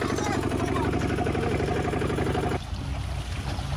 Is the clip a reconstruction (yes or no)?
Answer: no